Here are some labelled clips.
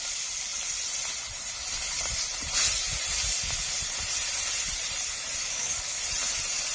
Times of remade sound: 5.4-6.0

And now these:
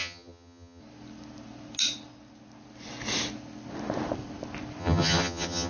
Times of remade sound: 0.0-0.8; 4.8-5.7

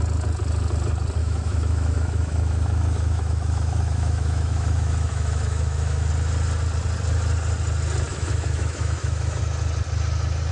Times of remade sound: 1.2-6.1; 8.1-9.4

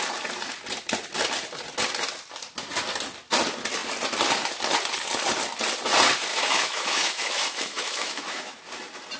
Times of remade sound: 6.3-8.6